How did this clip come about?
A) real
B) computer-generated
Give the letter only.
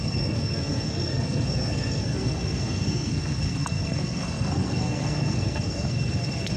B